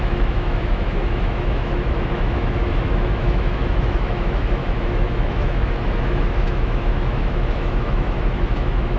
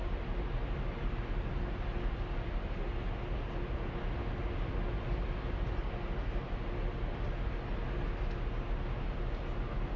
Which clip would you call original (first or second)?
second